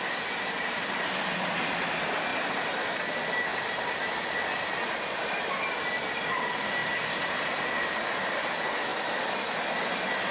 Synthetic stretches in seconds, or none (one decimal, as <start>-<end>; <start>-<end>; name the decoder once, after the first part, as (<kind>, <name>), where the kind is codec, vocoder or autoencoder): none